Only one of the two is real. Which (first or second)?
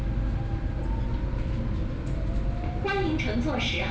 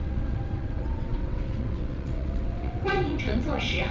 first